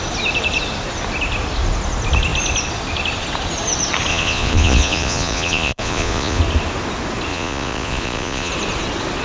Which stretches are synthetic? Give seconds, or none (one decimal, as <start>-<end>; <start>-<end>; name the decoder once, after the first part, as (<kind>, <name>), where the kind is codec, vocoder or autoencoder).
4.1-6.4 (vocoder, Vocos); 7.3-8.5